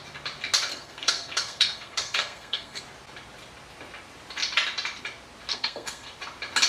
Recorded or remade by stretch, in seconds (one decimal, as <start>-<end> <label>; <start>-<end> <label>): 0.0-0.7 recorded; 0.7-2.8 remade; 2.8-5.5 recorded; 5.5-6.1 remade; 6.1-6.7 recorded